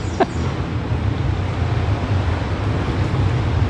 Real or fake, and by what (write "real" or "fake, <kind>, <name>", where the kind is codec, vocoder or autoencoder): real